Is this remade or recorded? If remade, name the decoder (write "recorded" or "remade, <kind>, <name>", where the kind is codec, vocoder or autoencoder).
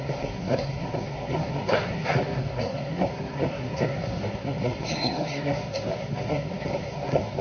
remade, codec, SNAC